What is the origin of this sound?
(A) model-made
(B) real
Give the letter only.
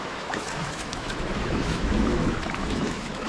A